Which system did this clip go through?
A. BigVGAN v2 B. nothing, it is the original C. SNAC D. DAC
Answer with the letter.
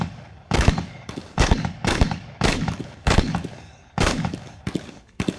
D